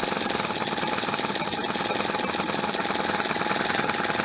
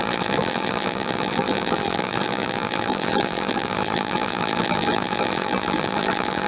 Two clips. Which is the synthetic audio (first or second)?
second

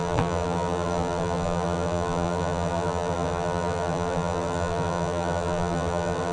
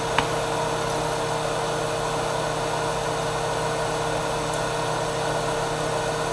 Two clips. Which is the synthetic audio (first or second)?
first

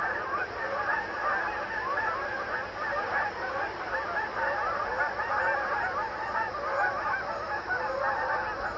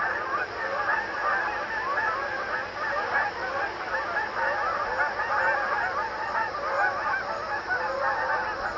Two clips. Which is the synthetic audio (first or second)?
first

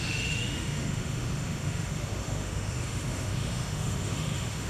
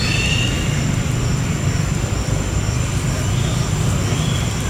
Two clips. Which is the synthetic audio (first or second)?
first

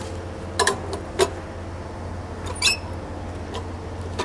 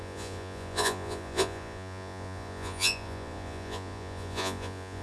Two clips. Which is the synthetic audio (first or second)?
second